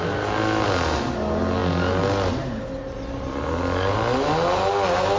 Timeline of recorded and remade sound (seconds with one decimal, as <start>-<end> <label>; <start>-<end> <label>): 0.0-5.2 recorded